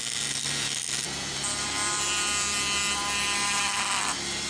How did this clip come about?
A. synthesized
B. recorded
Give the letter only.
B